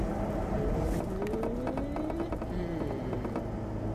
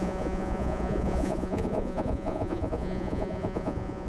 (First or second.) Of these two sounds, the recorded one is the first